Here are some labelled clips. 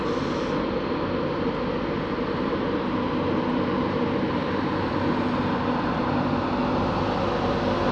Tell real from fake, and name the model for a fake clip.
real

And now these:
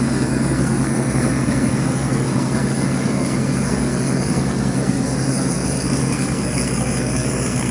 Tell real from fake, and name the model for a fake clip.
fake, codec, SNAC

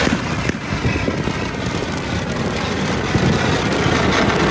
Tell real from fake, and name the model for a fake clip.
real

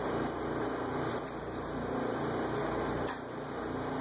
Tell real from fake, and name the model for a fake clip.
real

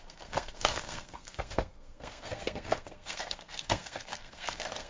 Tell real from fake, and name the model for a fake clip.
fake, codec, SNAC